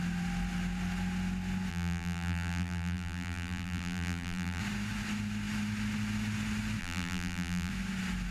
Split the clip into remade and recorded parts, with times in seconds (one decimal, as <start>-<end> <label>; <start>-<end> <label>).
0.0-1.7 recorded; 1.7-4.6 remade; 4.6-6.8 recorded; 6.8-7.7 remade; 7.7-8.3 recorded